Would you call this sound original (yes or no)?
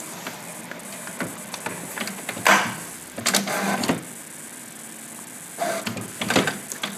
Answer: yes